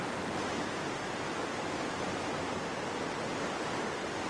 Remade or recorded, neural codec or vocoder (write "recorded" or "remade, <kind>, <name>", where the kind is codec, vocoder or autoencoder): recorded